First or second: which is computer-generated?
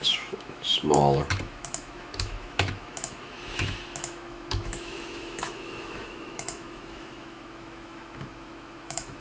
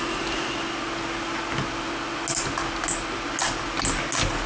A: first